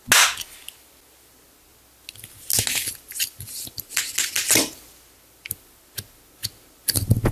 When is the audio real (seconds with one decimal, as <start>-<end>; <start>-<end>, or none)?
0.0-7.3